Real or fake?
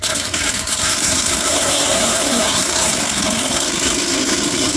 fake